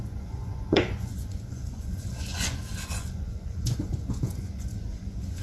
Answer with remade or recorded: remade